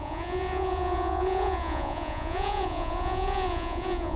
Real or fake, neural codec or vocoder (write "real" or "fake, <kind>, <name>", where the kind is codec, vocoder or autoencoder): fake, vocoder, Vocos